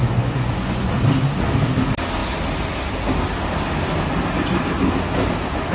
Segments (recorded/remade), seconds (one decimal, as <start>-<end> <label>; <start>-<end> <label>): 0.0-0.9 remade; 0.9-5.7 recorded